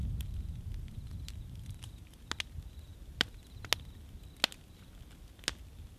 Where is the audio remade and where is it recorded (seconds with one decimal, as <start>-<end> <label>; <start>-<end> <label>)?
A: 0.0-2.2 remade; 2.2-6.0 recorded